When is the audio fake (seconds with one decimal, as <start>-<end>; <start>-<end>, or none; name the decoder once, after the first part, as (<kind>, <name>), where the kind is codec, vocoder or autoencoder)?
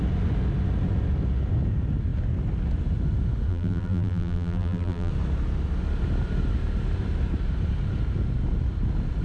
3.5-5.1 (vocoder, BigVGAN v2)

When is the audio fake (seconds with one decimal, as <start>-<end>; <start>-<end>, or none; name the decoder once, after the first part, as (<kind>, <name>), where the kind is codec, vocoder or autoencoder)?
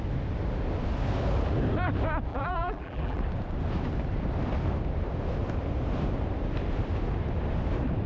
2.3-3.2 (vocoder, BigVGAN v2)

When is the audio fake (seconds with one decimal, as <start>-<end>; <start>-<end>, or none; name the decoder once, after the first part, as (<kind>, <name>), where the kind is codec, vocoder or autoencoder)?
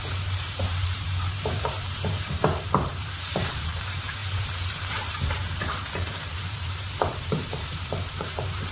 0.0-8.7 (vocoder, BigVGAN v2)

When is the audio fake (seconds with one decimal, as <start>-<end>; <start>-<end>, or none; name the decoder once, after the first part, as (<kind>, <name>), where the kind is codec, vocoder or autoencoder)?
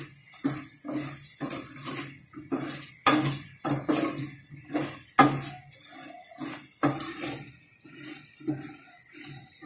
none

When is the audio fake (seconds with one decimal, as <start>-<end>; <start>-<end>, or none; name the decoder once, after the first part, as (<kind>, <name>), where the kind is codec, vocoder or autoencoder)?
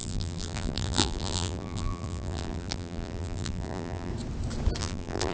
0.0-4.1 (vocoder, BigVGAN v2); 4.8-5.3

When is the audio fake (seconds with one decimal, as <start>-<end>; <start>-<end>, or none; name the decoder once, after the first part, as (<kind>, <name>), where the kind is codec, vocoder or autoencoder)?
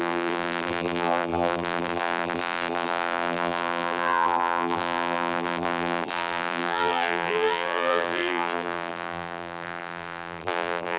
0.0-11.0 (vocoder, BigVGAN v2)